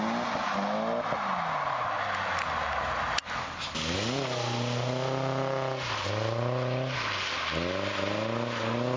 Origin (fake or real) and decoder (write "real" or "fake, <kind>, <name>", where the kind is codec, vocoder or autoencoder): real